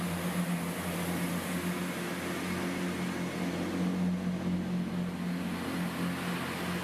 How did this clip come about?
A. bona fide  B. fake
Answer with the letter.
A